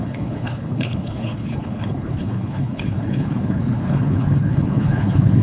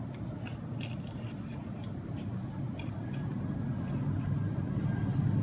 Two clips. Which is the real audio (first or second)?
second